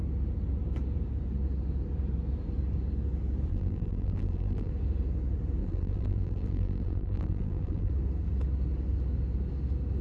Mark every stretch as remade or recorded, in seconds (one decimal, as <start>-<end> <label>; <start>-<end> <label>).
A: 0.0-3.5 recorded; 3.5-4.7 remade; 4.7-5.6 recorded; 5.6-7.9 remade; 7.9-10.0 recorded

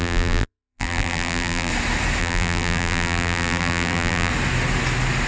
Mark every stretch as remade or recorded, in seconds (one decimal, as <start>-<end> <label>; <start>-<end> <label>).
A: 0.0-1.7 remade; 1.7-2.2 recorded; 2.2-4.3 remade; 4.3-5.3 recorded

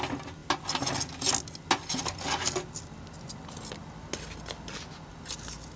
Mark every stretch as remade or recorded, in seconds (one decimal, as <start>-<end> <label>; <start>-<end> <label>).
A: 0.0-5.8 recorded

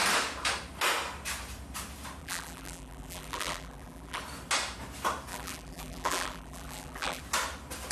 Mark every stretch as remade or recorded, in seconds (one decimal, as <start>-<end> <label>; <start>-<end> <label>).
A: 0.0-2.2 recorded; 2.2-4.2 remade; 4.2-5.3 recorded; 5.3-7.2 remade; 7.2-7.9 recorded